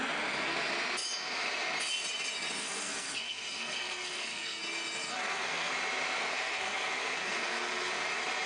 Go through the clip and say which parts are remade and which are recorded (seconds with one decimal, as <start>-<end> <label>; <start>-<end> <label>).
0.0-2.6 recorded; 2.6-4.6 remade; 4.6-5.1 recorded; 5.1-5.7 remade; 5.7-6.2 recorded; 6.2-7.9 remade; 7.9-8.5 recorded